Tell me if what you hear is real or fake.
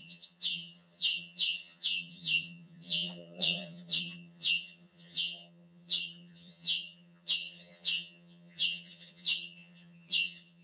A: fake